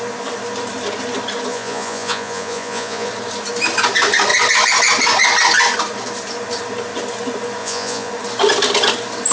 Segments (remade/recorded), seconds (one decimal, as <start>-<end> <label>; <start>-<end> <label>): 0.0-1.5 recorded; 1.5-3.1 remade; 3.1-7.6 recorded; 7.6-8.1 remade; 8.1-9.3 recorded